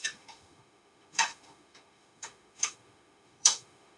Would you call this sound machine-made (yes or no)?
yes